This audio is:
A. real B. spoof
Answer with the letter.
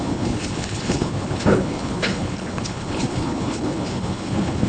B